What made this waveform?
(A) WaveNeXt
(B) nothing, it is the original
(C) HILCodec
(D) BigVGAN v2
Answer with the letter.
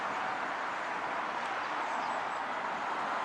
B